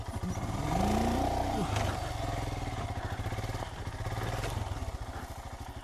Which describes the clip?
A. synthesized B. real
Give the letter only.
B